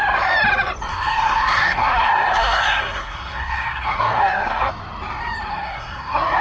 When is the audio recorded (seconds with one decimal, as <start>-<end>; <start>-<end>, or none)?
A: 0.0-0.9; 4.7-5.5